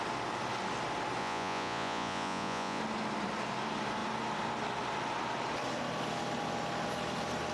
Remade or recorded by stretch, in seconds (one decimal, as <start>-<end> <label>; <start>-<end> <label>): 0.0-1.2 recorded; 1.2-2.8 remade; 2.8-7.5 recorded